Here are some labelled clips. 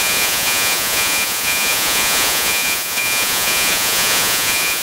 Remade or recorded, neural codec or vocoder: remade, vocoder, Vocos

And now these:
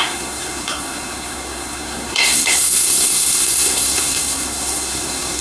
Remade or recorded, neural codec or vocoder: remade, codec, SNAC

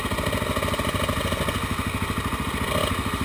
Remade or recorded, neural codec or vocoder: recorded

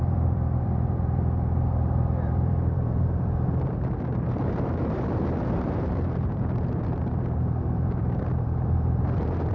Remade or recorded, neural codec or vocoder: remade, vocoder, BigVGAN v2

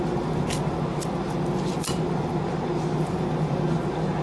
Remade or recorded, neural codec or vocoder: recorded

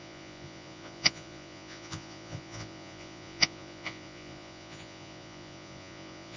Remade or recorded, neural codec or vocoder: remade, vocoder, Vocos